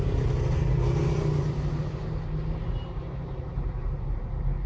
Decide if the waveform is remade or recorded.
recorded